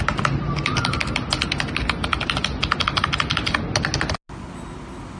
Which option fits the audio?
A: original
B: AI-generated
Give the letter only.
A